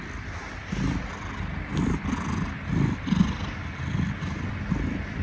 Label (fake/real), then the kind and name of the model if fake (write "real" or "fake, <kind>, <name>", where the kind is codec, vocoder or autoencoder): real